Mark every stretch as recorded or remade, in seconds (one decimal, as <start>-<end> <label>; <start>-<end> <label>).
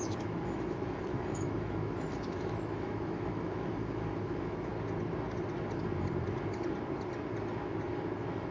0.0-4.7 remade; 4.7-8.5 recorded